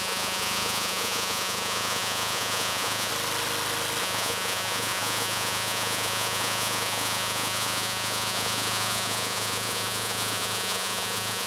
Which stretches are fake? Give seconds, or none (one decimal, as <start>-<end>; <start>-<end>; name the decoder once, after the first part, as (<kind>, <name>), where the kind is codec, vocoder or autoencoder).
0.0-3.1 (vocoder, Vocos); 4.0-11.5

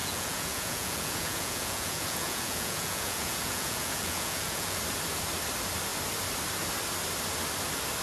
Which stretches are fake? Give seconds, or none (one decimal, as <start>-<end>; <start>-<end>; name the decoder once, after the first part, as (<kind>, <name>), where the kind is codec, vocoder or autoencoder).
0.0-4.8 (vocoder, Vocos)